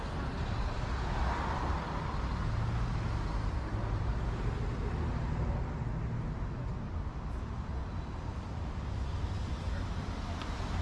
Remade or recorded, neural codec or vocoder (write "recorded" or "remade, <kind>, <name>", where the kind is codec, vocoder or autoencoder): recorded